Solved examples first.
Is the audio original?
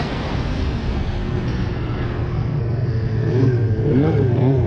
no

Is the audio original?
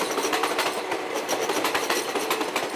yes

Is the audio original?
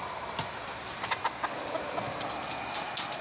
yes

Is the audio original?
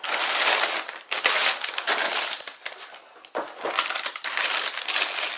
yes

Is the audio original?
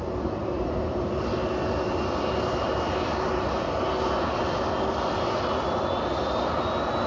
yes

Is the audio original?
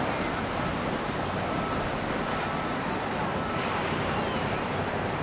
yes